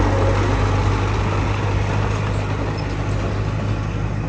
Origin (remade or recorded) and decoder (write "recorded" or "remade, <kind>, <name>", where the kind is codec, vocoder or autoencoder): recorded